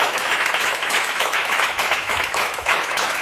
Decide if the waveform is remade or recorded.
remade